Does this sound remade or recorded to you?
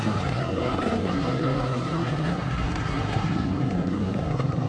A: remade